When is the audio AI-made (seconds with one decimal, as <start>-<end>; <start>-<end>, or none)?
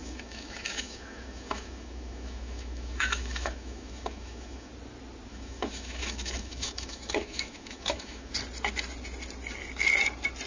0.0-4.7; 5.3-8.3